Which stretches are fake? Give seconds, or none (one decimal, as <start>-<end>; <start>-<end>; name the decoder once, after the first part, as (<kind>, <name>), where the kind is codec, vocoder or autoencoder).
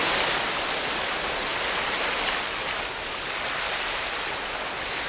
none